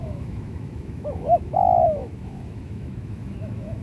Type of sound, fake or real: fake